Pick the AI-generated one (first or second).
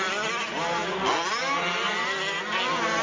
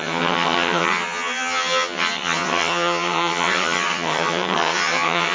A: second